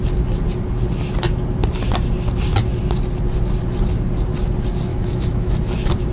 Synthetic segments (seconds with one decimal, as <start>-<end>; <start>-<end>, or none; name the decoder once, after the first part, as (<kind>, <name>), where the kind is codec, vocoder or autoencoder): 4.9-5.5 (autoencoder, DAC-VAE)